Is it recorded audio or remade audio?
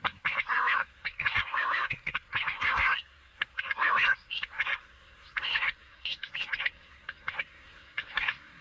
remade